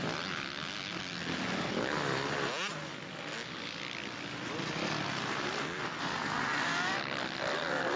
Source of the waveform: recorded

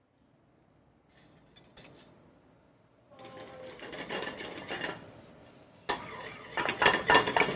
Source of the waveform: recorded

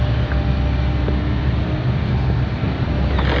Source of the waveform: recorded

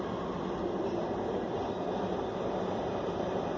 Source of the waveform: recorded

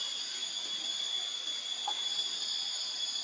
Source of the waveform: recorded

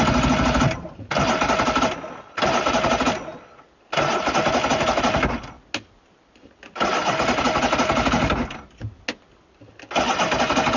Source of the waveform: recorded